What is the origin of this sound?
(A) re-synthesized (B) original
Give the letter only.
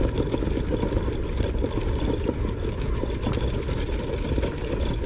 B